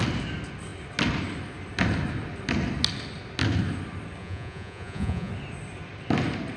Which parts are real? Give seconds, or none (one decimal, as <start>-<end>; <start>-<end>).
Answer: 0.0-4.2; 5.3-6.6